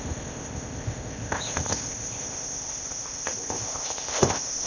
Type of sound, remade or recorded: remade